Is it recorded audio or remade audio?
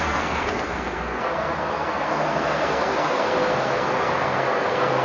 remade